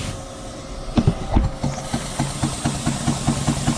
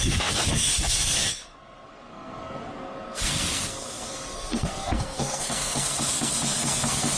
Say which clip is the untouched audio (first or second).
first